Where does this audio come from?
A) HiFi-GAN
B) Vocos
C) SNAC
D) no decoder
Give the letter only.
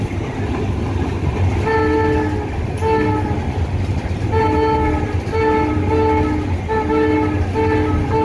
D